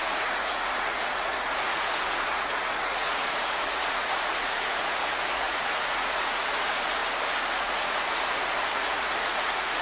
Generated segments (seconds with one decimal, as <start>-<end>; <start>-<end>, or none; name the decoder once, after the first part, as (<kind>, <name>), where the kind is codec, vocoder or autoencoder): 0.0-7.0 (vocoder, Vocos); 7.6-9.8